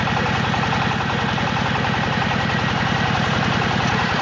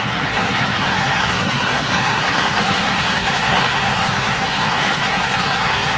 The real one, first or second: first